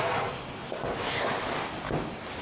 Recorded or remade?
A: recorded